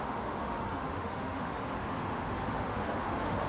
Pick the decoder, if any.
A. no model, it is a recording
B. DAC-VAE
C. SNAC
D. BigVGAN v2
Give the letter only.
B